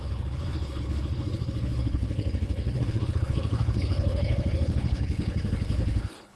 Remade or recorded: remade